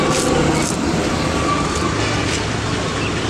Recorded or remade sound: recorded